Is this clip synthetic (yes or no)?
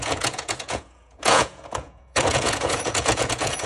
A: yes